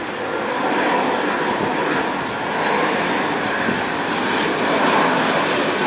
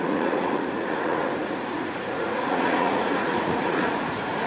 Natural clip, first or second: first